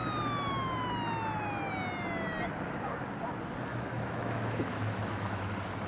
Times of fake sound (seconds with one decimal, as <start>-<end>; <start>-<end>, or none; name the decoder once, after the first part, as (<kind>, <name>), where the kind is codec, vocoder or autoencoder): 3.7-5.5 (autoencoder, DAC-VAE)